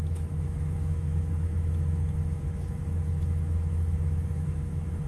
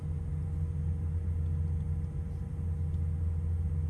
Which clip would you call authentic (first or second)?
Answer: second